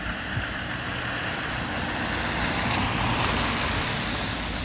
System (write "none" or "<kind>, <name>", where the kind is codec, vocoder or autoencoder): none